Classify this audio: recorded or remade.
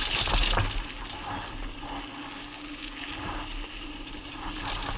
recorded